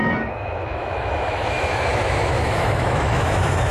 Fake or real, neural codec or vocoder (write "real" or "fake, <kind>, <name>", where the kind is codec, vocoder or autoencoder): fake, autoencoder, DAC-VAE